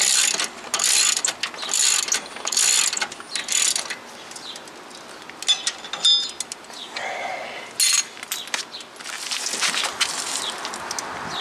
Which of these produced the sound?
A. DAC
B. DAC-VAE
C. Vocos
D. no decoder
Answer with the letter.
D